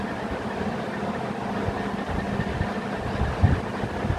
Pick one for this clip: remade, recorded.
recorded